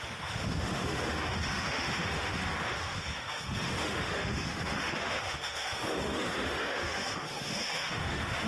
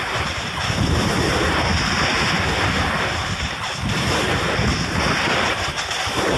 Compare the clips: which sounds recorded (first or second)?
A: second